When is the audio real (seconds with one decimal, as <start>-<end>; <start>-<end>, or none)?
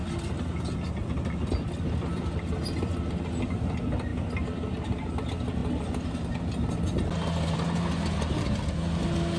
0.0-9.4